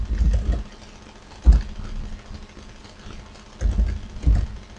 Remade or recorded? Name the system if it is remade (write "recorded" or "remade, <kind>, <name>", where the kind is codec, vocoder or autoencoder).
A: recorded